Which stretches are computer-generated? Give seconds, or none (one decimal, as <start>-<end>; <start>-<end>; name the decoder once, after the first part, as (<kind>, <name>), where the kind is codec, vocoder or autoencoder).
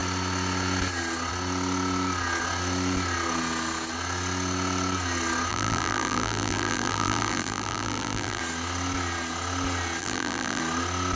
5.5-8.4 (vocoder, BigVGAN v2); 10.0-10.6